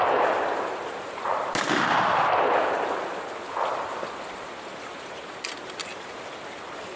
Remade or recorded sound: recorded